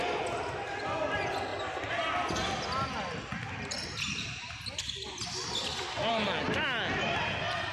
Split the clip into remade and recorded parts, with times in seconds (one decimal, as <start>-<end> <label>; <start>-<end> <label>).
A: 0.0-7.7 recorded